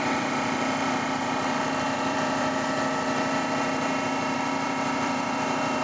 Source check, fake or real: fake